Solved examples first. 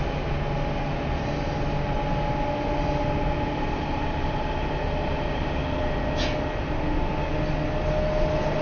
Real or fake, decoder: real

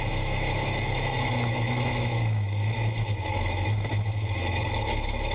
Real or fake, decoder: fake, autoencoder, DAC-VAE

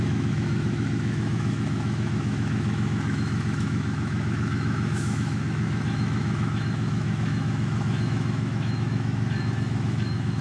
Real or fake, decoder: fake, autoencoder, DAC-VAE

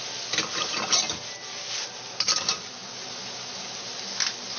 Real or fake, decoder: real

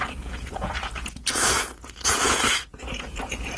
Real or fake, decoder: fake, vocoder, Vocos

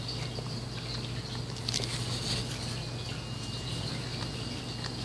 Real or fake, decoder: real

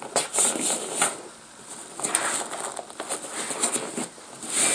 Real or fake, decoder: real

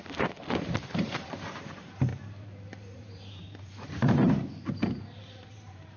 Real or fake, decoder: fake, vocoder, BigVGAN v2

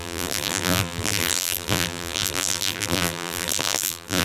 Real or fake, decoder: fake, vocoder, BigVGAN v2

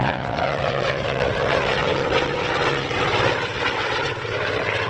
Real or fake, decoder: fake, vocoder, WaveNeXt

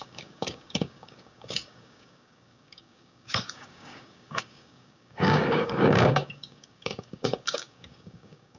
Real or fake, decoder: fake, codec, DAC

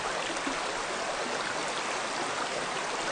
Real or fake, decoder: real